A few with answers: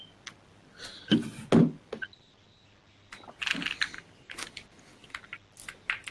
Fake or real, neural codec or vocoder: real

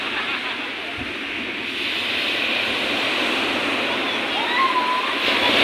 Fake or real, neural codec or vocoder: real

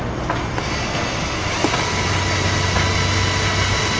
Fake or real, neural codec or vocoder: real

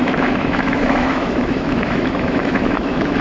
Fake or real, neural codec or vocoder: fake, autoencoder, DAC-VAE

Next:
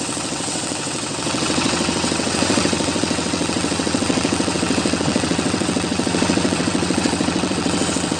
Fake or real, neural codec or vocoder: fake, vocoder, WaveNeXt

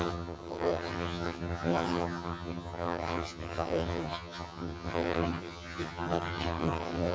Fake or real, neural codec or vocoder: fake, vocoder, HiFi-GAN